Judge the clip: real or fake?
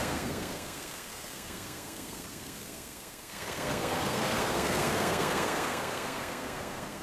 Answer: fake